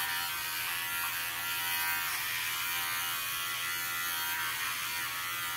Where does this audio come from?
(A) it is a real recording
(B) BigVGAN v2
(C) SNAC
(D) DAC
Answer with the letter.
A